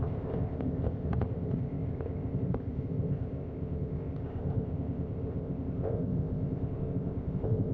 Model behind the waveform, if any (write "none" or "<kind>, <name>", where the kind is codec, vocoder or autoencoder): codec, ZipCodec